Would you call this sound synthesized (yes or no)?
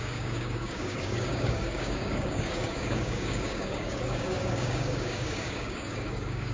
yes